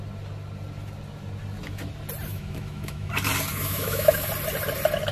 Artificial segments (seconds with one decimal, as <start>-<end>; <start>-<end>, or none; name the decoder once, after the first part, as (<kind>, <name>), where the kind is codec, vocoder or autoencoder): 2.3-3.1 (autoencoder, DAC-VAE); 3.5-4.3